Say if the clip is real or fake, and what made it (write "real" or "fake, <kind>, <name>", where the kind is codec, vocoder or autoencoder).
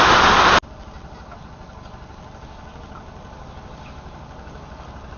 real